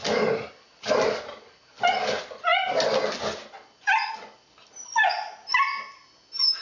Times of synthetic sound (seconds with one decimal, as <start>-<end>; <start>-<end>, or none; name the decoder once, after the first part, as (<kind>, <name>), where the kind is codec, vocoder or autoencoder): none